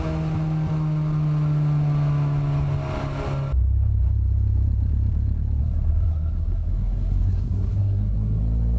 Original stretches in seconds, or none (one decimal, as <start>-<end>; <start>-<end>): 0.0-5.6; 8.4-8.8